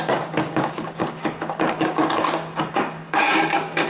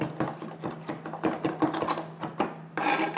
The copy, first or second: first